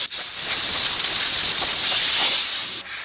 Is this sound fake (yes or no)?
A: no